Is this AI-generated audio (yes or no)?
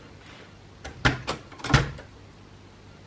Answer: no